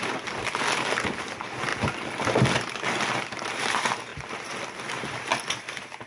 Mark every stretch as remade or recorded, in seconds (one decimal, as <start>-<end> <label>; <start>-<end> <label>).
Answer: 0.0-6.1 recorded